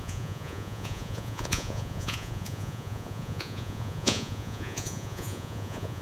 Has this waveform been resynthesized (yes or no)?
yes